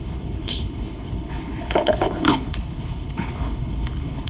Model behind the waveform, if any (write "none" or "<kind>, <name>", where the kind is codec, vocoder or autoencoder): codec, HILCodec